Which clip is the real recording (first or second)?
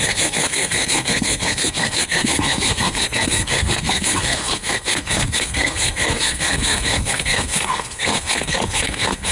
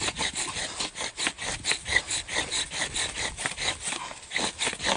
second